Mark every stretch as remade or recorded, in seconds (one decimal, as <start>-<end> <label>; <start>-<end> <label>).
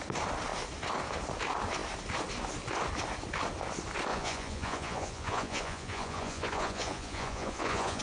0.0-4.1 recorded; 4.1-8.0 remade